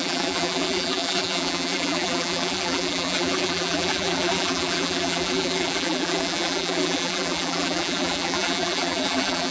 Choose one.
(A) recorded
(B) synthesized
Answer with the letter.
B